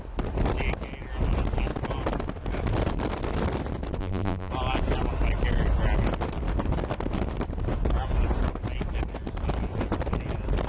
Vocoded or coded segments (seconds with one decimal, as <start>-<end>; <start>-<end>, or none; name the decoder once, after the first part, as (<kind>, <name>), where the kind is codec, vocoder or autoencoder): 4.0-4.5 (vocoder, BigVGAN v2)